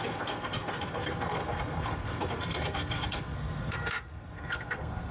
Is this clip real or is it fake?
fake